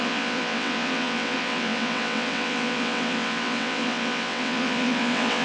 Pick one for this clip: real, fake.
fake